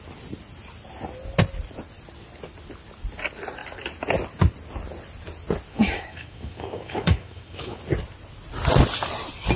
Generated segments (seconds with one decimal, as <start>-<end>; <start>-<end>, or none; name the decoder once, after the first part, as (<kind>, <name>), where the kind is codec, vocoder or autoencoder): 5.7-7.8 (autoencoder, DAC-VAE)